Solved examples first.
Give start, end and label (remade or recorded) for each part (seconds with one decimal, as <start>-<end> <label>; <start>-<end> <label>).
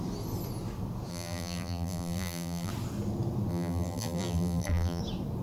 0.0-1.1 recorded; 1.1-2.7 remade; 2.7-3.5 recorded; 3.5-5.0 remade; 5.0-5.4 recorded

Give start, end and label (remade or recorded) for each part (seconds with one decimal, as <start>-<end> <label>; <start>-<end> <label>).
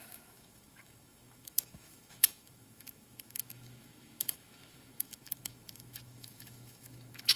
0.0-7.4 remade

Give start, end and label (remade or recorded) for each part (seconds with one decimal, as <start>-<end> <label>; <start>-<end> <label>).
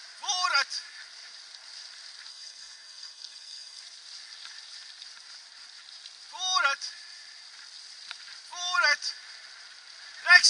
0.0-2.3 recorded; 2.3-3.8 remade; 3.8-10.5 recorded